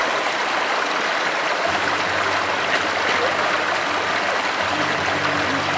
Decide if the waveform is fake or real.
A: real